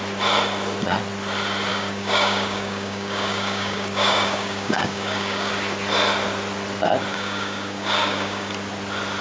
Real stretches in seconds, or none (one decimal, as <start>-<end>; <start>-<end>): 0.0-1.7; 5.5-7.1; 8.5-9.2